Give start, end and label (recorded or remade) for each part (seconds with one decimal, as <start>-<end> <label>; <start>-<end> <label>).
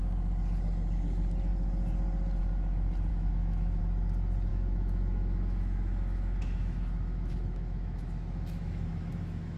0.0-3.1 recorded; 3.1-3.8 remade; 3.8-4.5 recorded; 4.5-9.6 remade